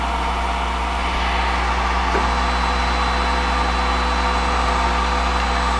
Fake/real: real